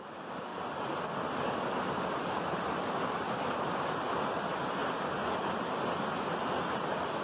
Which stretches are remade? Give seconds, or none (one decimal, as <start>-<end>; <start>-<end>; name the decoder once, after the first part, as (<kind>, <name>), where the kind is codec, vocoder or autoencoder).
none